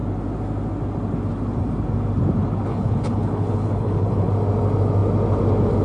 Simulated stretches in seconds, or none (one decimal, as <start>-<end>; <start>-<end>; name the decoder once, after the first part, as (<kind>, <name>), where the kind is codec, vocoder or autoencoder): 2.7-4.3 (codec, HILCodec)